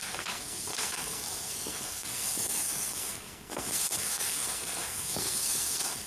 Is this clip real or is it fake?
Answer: fake